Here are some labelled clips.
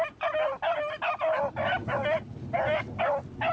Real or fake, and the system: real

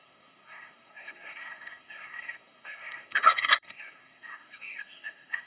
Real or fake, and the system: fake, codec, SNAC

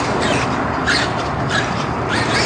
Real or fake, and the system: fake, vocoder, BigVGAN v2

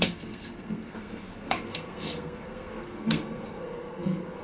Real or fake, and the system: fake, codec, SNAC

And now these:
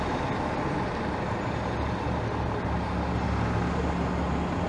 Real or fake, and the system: real